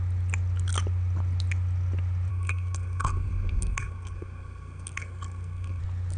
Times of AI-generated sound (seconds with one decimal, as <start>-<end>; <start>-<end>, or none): 2.3-5.8